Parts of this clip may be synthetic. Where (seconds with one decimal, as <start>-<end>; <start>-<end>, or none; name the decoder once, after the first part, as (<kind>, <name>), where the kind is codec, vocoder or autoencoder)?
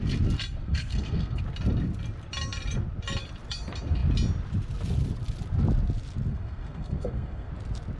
0.6-1.4 (codec, SNAC); 6.3-7.5